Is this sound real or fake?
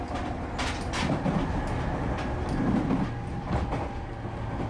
real